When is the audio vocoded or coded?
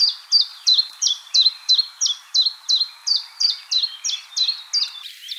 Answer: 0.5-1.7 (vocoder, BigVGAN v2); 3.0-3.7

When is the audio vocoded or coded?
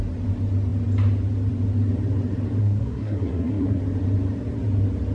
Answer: 2.6-3.8 (codec, SNAC)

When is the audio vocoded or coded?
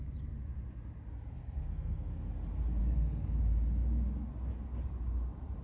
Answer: 1.4-2.3 (codec, SNAC); 2.8-3.4